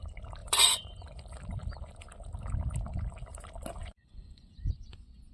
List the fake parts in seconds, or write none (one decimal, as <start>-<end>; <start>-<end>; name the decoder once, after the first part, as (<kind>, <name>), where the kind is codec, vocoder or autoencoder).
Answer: 0.4-1.2 (vocoder, Vocos); 3.8-5.3